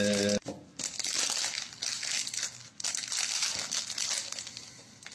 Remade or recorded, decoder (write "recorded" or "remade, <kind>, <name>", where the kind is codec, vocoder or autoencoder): recorded